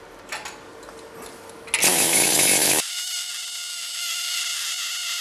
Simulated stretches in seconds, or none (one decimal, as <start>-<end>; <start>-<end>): 1.9-3.3; 3.7-4.4